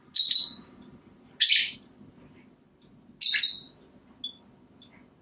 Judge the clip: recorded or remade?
recorded